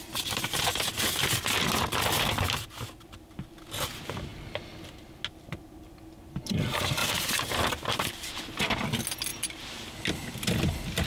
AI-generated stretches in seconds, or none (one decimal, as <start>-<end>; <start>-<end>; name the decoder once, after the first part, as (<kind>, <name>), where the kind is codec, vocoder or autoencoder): 7.0-8.3 (vocoder, BigVGAN v2)